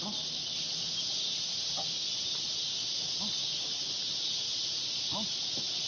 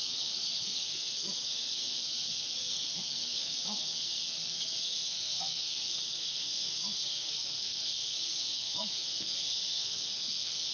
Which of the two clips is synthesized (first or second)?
second